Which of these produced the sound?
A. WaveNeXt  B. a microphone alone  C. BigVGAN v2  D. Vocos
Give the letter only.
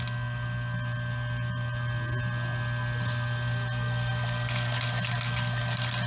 B